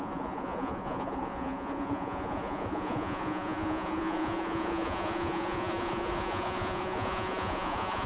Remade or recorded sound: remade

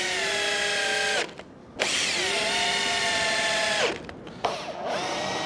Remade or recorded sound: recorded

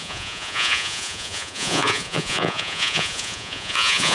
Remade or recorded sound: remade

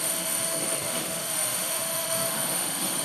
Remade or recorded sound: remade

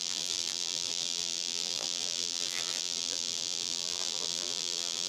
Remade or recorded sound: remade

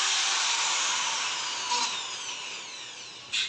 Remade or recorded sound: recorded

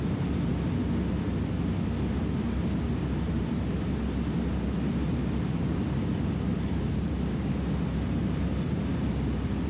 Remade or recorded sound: recorded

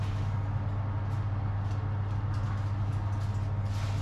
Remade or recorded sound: recorded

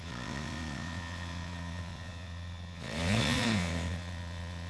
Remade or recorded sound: remade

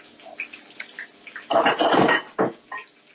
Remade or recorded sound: recorded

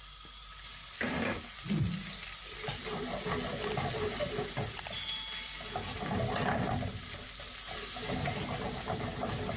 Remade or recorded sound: recorded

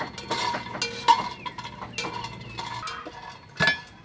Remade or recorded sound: recorded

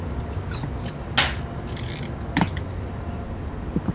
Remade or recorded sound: recorded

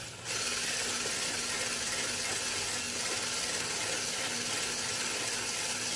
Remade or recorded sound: recorded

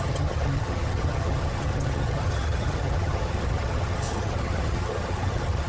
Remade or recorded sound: remade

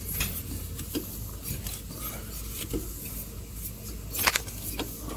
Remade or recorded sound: recorded